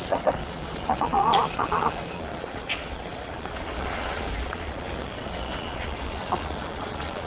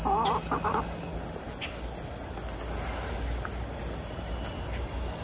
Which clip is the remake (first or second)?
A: first